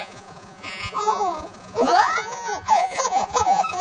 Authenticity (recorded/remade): remade